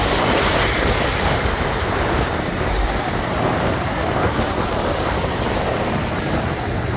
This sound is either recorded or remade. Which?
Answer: remade